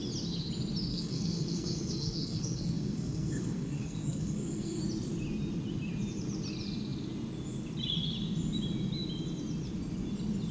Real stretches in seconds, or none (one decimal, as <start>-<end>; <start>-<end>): 0.0-0.9; 4.8-10.5